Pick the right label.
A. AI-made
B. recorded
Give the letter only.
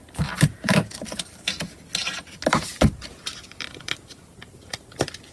A